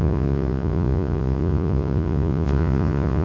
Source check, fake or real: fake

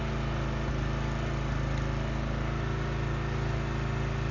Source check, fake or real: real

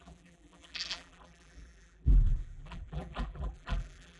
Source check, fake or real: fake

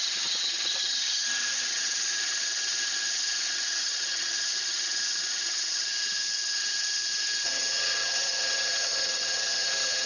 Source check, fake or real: fake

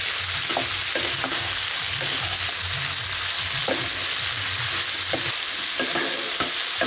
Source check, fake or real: real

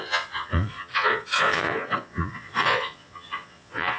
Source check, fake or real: fake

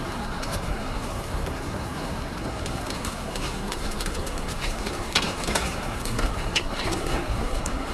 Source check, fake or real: fake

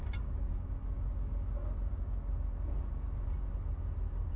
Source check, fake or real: real